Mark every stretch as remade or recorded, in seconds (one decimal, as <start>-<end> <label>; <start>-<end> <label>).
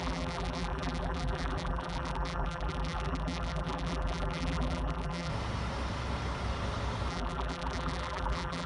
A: 0.0-5.3 remade; 5.3-7.1 recorded; 7.1-8.7 remade